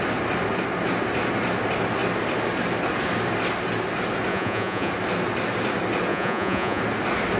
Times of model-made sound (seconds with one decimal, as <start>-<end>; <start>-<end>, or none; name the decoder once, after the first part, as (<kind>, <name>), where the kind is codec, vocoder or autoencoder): 4.3-4.9 (vocoder, Vocos); 6.1-6.8